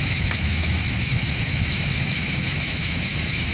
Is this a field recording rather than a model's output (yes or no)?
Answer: no